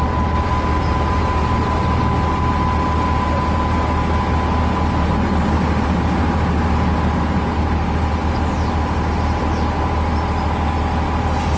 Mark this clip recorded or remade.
recorded